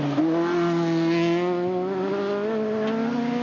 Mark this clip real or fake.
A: real